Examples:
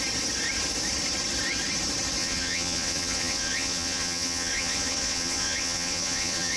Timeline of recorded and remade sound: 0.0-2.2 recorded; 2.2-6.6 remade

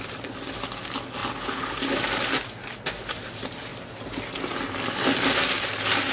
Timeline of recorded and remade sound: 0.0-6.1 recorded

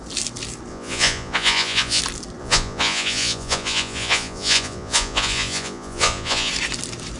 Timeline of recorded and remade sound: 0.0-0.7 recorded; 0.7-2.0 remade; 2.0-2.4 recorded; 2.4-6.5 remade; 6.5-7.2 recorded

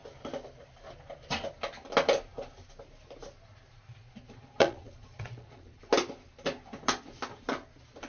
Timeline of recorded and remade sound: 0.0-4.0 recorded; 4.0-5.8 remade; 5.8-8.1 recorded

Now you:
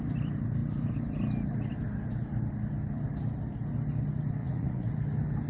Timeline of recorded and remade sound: 0.0-4.4 recorded; 4.4-4.9 remade; 4.9-5.5 recorded